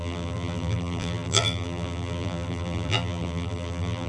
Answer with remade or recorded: remade